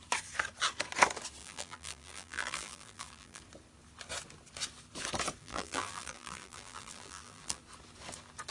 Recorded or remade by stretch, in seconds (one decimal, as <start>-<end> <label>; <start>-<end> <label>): 0.0-1.4 recorded; 1.4-3.4 remade; 3.4-5.4 recorded; 5.4-7.6 remade; 7.6-8.5 recorded